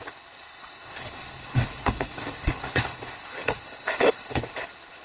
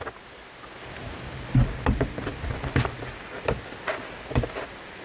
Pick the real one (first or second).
second